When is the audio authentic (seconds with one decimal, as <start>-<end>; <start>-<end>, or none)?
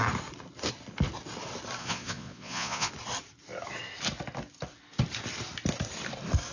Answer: 0.0-1.8; 2.9-6.5